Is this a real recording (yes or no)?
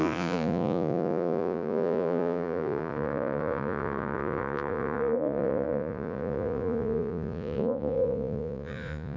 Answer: no